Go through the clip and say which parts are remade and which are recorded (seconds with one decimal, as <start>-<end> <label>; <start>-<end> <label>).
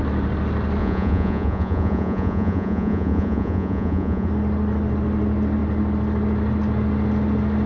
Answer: 0.0-0.8 recorded; 0.8-4.3 remade; 4.3-7.7 recorded